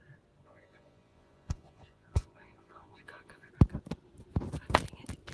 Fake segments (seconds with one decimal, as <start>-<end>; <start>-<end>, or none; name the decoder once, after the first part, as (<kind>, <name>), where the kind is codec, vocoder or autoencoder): 0.4-3.5 (vocoder, Vocos)